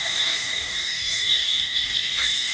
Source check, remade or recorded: remade